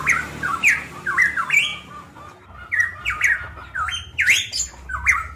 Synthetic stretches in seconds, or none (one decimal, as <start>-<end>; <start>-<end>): none